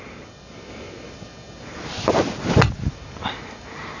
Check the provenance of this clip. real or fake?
real